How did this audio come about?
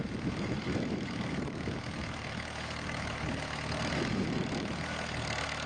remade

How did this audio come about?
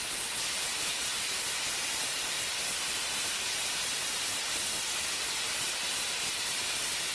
recorded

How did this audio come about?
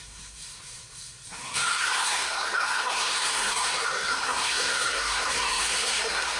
remade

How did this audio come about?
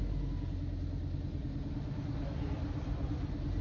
recorded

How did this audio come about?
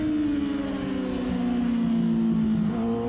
recorded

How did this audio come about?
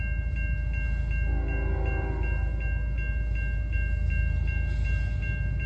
recorded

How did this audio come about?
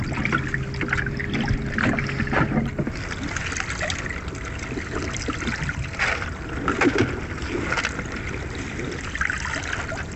recorded